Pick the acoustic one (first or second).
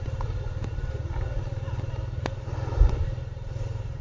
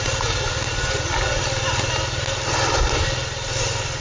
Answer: second